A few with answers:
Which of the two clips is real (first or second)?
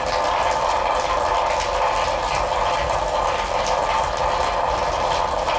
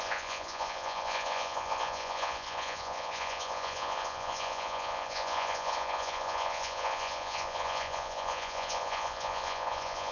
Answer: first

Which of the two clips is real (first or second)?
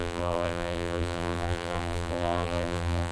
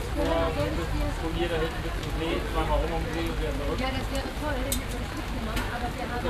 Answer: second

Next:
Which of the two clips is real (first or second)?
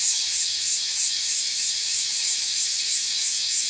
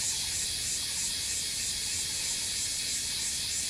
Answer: second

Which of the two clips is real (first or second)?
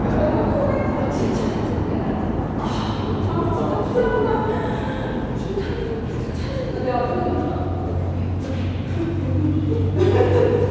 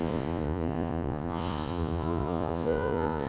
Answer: first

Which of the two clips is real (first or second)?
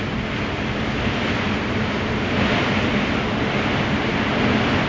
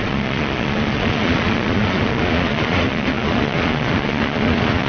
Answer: first